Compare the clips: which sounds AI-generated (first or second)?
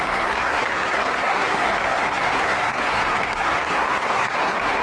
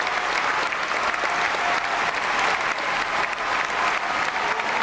first